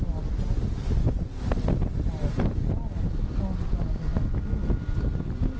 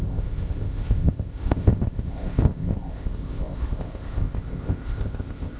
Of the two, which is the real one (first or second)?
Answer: first